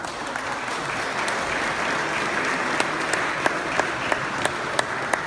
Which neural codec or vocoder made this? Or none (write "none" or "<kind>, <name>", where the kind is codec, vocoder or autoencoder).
none